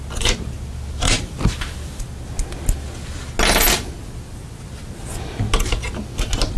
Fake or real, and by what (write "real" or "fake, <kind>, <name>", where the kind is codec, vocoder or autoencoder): real